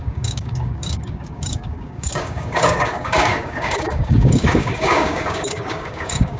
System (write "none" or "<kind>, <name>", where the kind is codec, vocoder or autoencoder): codec, DAC